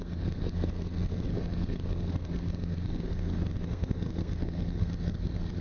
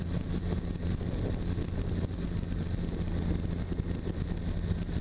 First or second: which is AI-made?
first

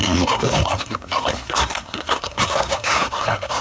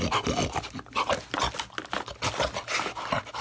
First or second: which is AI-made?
first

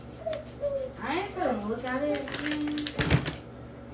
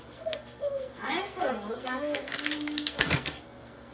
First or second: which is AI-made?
second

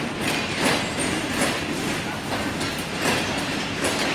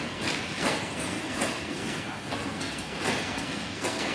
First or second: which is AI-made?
second